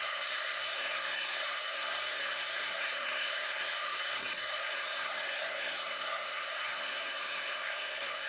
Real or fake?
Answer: fake